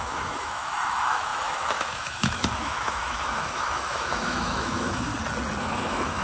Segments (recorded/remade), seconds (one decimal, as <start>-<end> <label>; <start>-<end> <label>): 0.0-5.1 remade; 5.1-5.6 recorded; 5.6-6.2 remade